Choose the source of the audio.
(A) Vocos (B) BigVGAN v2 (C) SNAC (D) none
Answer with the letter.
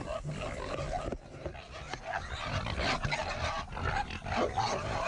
D